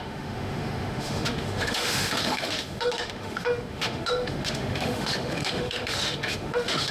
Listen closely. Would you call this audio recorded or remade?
remade